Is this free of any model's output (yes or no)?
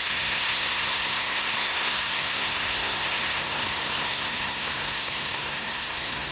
no